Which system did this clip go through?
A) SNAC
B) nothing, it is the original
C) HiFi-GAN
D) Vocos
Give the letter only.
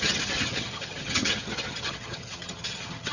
C